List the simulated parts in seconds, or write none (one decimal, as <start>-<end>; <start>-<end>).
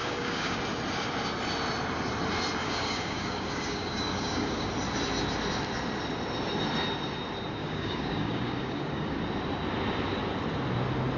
0.0-0.6; 2.6-4.7; 7.6-9.2